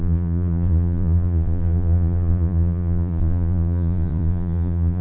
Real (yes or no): no